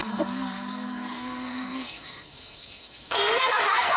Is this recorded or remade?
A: remade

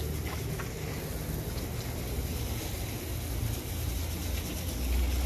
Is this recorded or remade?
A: recorded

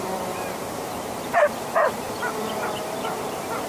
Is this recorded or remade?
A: remade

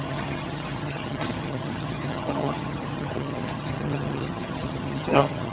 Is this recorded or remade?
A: remade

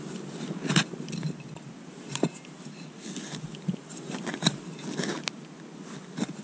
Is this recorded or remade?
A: recorded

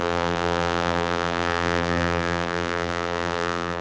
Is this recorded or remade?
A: remade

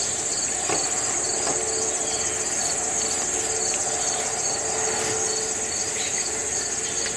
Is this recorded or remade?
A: recorded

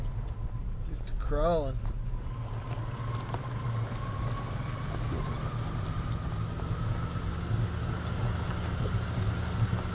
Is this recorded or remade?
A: recorded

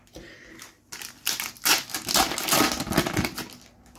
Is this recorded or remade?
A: recorded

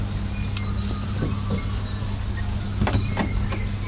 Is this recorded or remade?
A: recorded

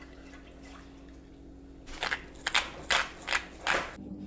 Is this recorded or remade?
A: recorded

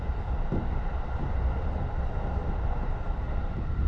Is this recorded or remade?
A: recorded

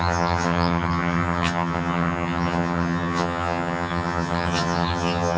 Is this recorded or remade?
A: remade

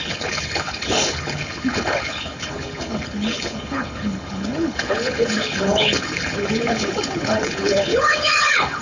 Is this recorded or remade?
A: remade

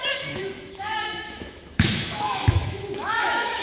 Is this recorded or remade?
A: remade